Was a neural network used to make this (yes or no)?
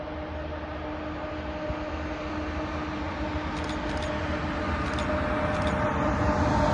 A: no